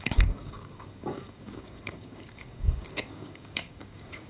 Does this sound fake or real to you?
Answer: fake